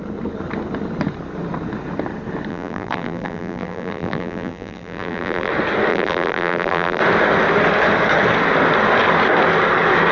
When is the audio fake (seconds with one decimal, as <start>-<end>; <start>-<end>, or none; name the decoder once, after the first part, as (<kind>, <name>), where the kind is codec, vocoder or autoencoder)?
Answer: 2.5-5.5 (vocoder, BigVGAN v2); 5.9-7.0